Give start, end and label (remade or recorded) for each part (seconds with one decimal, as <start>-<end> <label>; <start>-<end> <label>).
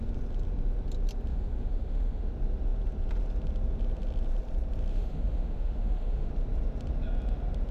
0.0-1.3 recorded; 1.3-2.3 remade; 2.3-4.9 recorded; 4.9-6.3 remade; 6.3-7.7 recorded